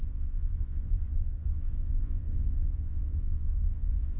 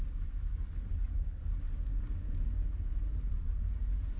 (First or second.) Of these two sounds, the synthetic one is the first